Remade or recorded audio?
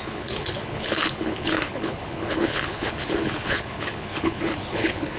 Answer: remade